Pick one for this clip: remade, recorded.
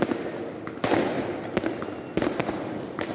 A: recorded